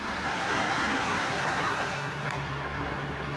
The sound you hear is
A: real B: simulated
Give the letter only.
B